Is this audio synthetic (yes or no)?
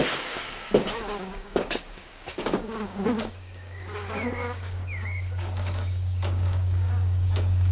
yes